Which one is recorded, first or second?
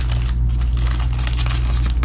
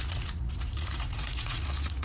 first